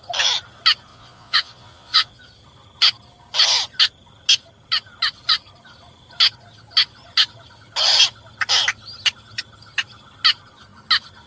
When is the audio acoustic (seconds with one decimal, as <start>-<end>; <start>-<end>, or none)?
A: 0.0-0.9; 2.2-11.3